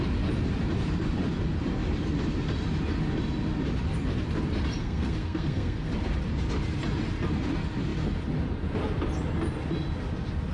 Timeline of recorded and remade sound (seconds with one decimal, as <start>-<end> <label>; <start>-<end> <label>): 0.0-4.8 recorded; 4.8-5.9 remade; 5.9-10.5 recorded